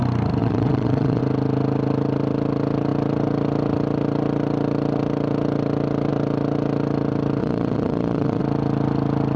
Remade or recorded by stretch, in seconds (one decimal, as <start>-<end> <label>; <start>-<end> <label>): 0.0-0.4 recorded; 0.4-1.2 remade; 1.2-7.4 recorded; 7.4-8.4 remade; 8.4-9.4 recorded